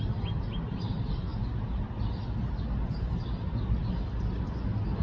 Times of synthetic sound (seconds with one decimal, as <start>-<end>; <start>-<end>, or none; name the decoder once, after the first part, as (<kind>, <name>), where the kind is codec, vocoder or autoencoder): none